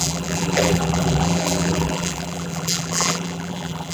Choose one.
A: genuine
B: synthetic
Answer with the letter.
B